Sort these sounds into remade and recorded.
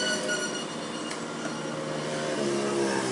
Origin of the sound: recorded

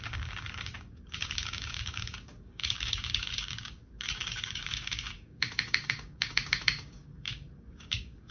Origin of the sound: remade